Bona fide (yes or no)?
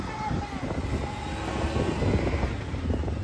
yes